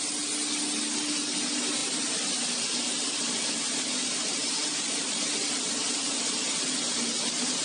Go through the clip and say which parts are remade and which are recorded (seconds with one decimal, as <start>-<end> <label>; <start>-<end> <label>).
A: 0.0-1.8 recorded; 1.8-5.7 remade; 5.7-7.6 recorded